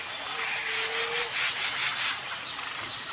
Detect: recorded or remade recorded